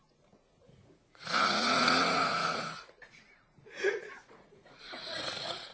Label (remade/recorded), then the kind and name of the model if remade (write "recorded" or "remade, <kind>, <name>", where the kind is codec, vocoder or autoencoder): remade, vocoder, Vocos